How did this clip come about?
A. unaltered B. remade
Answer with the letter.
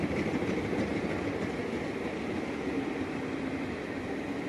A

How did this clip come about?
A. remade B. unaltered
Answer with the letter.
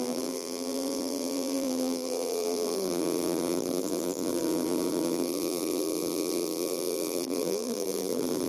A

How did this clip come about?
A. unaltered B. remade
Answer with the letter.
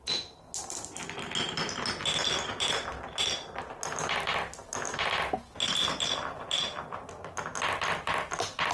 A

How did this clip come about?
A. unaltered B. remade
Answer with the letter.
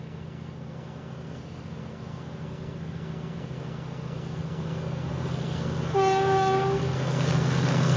B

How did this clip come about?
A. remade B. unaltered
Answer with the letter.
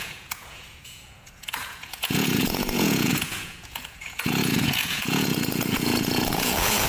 A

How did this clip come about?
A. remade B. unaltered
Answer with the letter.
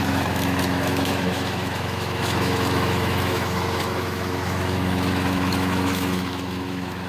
A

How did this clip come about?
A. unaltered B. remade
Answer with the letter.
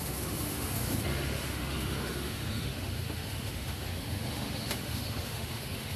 B